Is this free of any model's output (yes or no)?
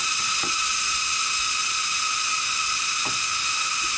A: yes